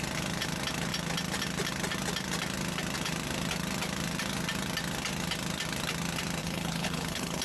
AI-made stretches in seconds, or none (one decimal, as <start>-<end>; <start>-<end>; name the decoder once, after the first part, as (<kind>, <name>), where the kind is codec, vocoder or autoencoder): 6.4-7.4 (codec, HILCodec)